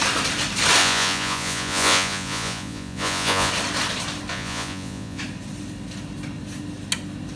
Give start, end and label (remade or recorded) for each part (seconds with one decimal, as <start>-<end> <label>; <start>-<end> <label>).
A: 0.0-0.8 recorded; 0.8-3.5 remade; 3.5-4.3 recorded; 4.3-5.2 remade; 5.2-7.4 recorded